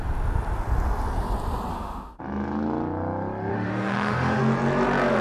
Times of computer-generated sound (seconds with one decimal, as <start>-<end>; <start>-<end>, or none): 1.7-2.2; 3.5-4.4